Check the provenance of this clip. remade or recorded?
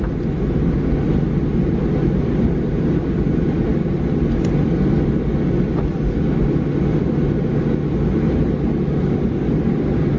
recorded